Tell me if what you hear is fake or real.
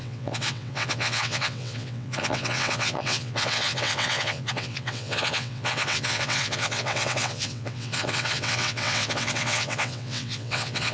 fake